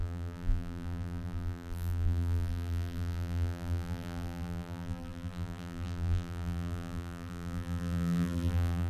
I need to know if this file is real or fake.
fake